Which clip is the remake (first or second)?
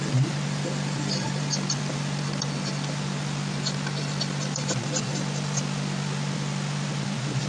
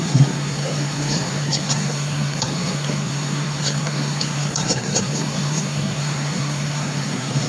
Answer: second